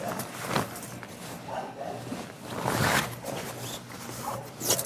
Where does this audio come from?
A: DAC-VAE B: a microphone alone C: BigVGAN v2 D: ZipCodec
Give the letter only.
B